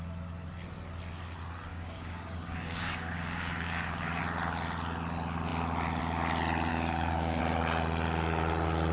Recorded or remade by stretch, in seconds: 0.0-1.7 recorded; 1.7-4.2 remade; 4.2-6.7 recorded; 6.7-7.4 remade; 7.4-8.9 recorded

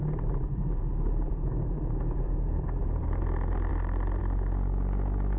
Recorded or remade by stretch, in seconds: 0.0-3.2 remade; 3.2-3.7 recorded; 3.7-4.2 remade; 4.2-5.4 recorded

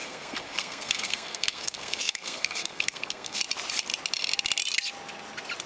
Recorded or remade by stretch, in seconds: 0.0-3.4 remade; 3.4-5.7 recorded